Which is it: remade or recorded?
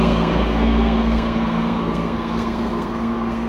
remade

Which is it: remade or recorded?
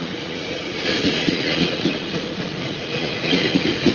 remade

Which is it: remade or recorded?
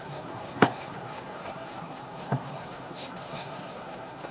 remade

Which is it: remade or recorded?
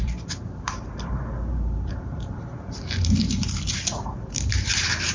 remade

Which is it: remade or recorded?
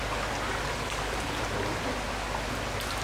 recorded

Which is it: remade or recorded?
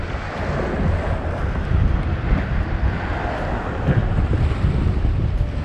recorded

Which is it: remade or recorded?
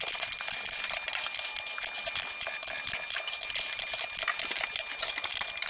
recorded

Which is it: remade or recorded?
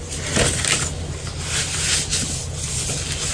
recorded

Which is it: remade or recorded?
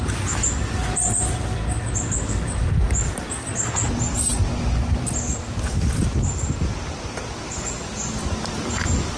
recorded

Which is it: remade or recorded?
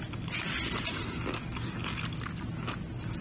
recorded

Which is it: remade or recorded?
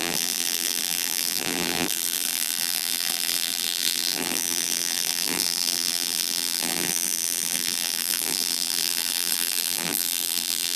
remade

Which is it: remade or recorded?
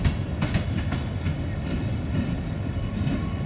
recorded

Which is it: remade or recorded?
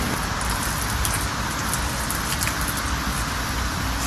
recorded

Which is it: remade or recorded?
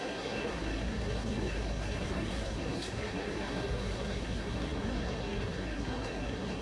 remade